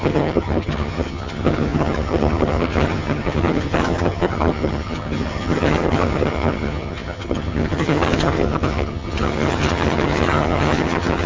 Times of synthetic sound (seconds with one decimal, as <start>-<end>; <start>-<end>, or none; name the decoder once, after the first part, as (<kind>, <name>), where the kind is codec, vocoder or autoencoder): 0.0-11.3 (vocoder, HiFi-GAN)